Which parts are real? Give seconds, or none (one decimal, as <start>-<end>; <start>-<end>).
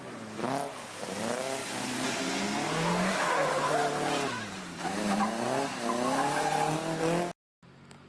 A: 0.0-1.6; 2.2-3.8; 5.9-8.1